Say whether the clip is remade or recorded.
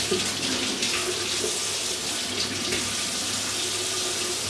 recorded